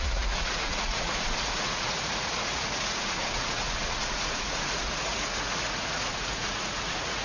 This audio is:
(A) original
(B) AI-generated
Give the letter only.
B